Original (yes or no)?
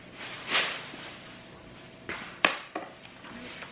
no